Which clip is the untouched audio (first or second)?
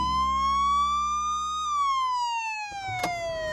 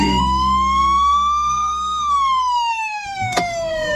first